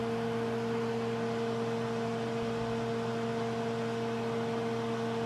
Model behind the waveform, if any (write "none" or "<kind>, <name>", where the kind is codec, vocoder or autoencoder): none